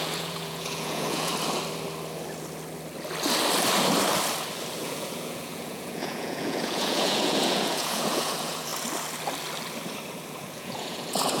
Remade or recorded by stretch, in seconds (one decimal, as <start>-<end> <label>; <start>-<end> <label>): 0.0-1.3 remade; 1.3-4.8 recorded; 4.8-8.7 remade; 8.7-10.3 recorded; 10.3-11.4 remade